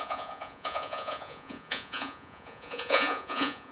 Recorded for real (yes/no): no